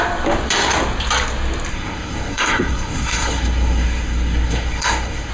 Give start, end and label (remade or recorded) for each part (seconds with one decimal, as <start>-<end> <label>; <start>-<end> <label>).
0.0-1.7 recorded; 1.7-5.3 remade